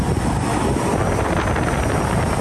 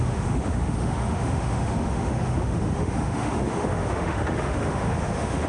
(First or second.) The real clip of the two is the first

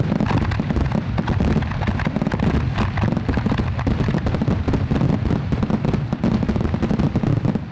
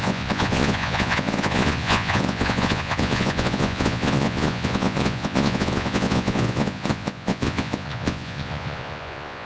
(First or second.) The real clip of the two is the first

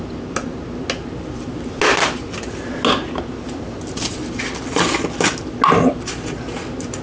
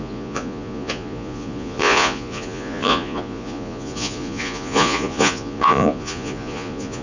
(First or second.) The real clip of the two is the first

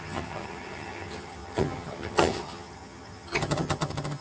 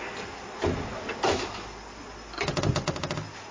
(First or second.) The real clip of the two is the second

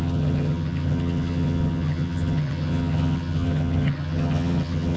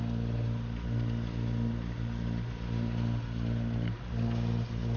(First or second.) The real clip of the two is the second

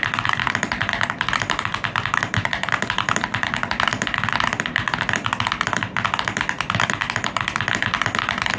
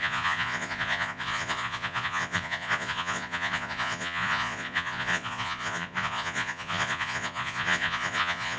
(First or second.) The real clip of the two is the first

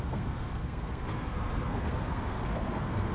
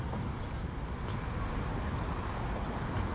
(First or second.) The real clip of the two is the second